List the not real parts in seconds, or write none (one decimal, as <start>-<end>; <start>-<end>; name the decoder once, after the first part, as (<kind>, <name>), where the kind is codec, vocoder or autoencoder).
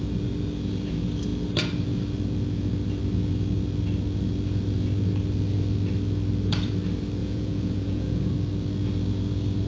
7.2-8.3 (vocoder, Vocos)